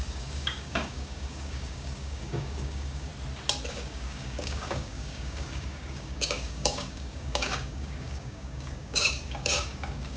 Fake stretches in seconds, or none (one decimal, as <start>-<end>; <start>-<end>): 0.0-3.1; 3.7-10.2